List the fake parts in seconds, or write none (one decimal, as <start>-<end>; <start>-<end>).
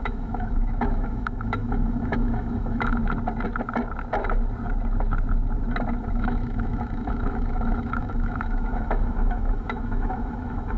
0.0-3.0; 6.1-10.8